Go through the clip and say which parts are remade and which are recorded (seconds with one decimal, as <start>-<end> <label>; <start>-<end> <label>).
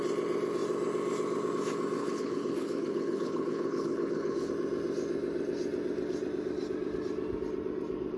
0.0-2.0 recorded; 2.0-4.5 remade; 4.5-8.2 recorded